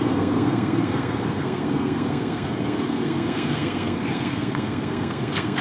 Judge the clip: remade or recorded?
remade